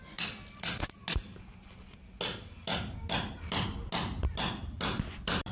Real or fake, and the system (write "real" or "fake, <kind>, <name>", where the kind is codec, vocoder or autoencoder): real